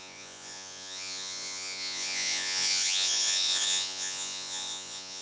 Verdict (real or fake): fake